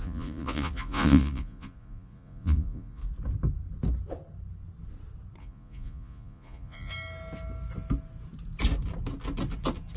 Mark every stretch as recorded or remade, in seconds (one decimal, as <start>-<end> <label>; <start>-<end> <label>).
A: 0.0-3.0 remade; 3.0-5.4 recorded; 5.4-6.9 remade; 6.9-10.0 recorded